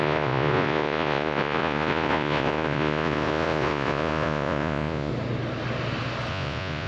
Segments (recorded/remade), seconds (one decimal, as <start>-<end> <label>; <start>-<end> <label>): 0.0-5.1 remade; 5.1-6.3 recorded; 6.3-6.9 remade